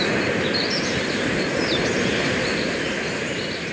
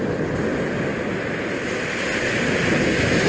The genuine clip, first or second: second